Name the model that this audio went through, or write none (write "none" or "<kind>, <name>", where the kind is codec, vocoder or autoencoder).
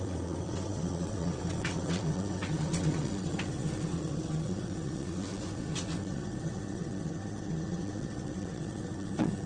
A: vocoder, WaveNeXt